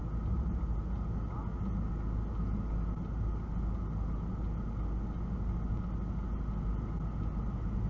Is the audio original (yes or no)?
yes